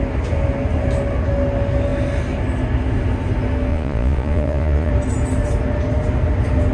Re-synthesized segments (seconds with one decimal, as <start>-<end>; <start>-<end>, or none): 3.7-4.9